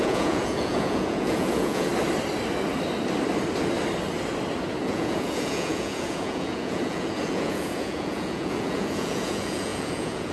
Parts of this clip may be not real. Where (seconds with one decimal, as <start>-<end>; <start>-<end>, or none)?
0.0-1.9; 4.8-10.3